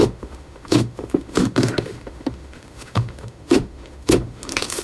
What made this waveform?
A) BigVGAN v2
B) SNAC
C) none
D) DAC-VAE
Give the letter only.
D